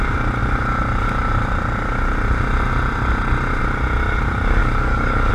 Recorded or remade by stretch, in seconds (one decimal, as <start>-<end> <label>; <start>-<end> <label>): 0.0-4.6 recorded; 4.6-5.3 remade